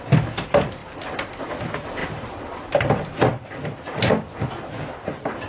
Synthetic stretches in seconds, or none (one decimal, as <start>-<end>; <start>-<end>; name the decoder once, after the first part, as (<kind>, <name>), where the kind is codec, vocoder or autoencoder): none